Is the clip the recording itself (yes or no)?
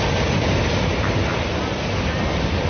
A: yes